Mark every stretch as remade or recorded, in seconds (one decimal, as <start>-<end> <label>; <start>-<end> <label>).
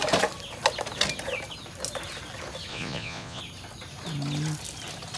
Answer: 0.0-2.7 recorded; 2.7-3.4 remade; 3.4-5.2 recorded